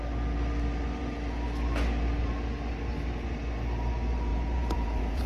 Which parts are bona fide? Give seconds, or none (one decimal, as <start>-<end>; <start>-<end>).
0.0-4.3